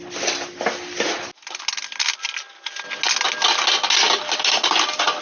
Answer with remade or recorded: recorded